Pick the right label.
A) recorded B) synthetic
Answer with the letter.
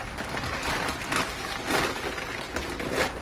A